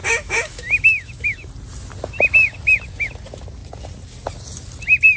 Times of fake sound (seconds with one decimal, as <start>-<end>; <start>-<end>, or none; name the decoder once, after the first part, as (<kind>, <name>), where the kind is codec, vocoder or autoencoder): 0.0-1.5 (autoencoder, DAC-VAE)